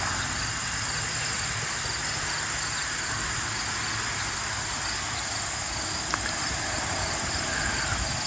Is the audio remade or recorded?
recorded